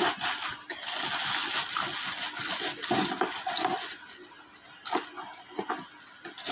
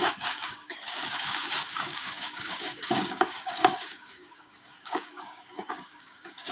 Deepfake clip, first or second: second